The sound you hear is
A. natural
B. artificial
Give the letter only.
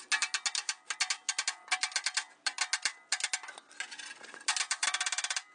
A